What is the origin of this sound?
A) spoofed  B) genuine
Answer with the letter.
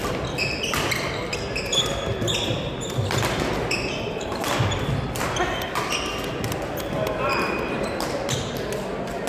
B